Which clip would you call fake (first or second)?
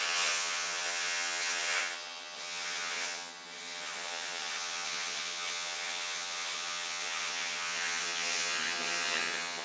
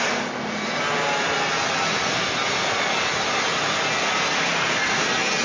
first